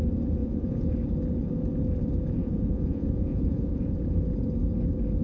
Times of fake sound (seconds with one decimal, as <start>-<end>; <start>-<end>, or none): 0.4-0.9; 2.4-3.7